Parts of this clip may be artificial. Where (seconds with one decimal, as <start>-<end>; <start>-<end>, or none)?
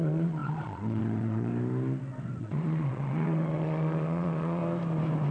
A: 0.0-1.5; 2.4-4.6